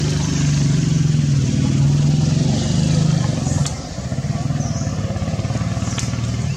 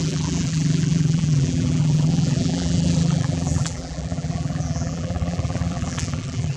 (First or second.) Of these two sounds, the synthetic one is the second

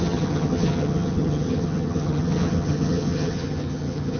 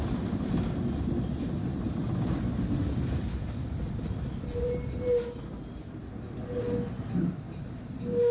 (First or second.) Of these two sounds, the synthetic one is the first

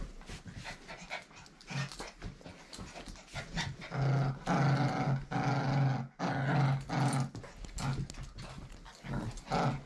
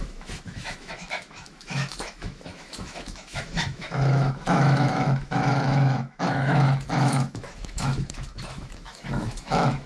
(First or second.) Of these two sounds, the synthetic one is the second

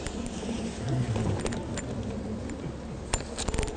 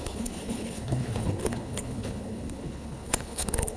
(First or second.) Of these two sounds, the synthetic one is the second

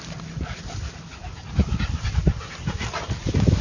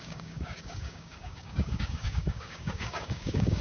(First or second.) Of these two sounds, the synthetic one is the second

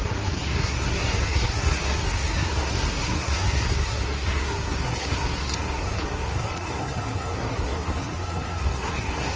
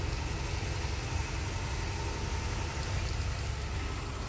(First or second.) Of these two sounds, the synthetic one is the first